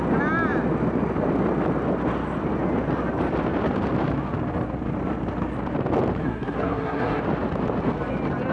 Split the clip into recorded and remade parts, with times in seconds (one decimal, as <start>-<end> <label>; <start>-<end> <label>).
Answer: 0.0-6.2 recorded; 6.2-7.2 remade; 7.2-8.5 recorded